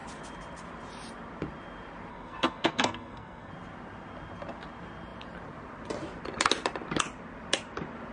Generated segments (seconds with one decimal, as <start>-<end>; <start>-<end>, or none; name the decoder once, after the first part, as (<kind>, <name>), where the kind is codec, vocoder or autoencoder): 2.1-3.5 (codec, SNAC)